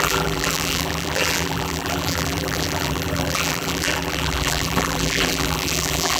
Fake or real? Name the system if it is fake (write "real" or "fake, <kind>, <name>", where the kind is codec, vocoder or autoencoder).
fake, vocoder, BigVGAN v2